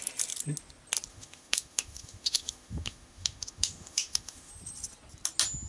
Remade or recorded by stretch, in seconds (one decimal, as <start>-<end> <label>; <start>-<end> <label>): 0.0-1.1 recorded; 1.1-4.5 remade; 4.5-5.7 recorded